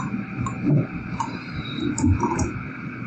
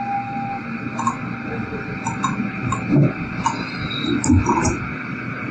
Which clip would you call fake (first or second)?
first